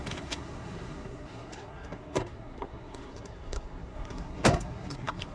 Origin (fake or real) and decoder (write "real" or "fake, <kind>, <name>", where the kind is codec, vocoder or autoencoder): fake, codec, SNAC